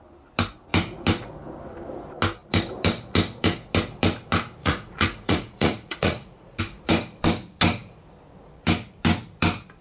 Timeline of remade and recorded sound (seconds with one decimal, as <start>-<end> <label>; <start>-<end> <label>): 0.0-4.6 recorded; 4.6-6.6 remade; 6.6-9.8 recorded